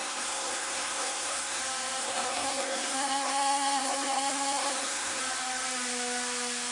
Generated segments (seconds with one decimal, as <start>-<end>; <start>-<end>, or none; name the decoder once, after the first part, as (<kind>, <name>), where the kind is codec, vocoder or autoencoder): 0.0-1.6 (codec, SNAC); 2.0-5.2